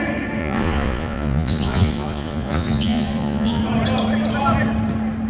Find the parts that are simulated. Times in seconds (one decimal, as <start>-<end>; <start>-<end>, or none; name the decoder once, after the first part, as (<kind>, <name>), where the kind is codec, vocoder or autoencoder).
0.4-3.6 (vocoder, Vocos)